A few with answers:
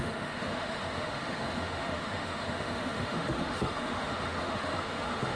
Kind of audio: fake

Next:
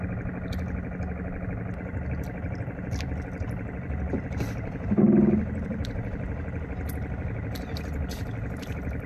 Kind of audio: real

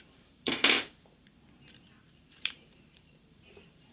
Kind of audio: fake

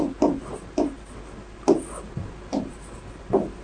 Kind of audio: real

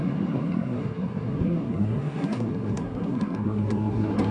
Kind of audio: fake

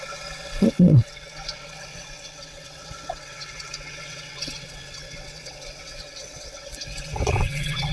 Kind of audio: fake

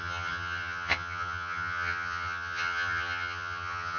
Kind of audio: fake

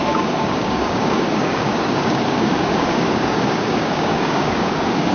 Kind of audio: fake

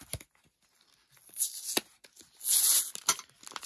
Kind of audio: real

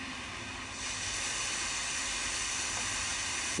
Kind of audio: real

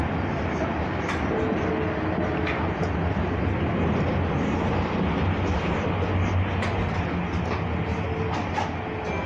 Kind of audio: real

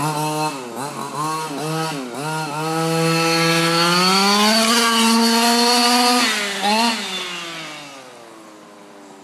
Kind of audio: real